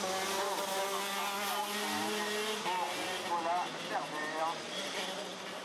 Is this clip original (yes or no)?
yes